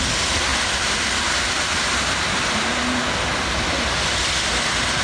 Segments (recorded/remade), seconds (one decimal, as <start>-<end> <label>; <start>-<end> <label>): 0.0-5.0 recorded